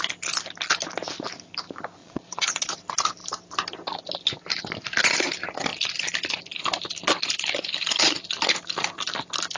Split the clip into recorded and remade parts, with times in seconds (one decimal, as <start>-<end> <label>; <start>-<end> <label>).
0.0-2.0 recorded; 2.0-2.7 remade; 2.7-9.6 recorded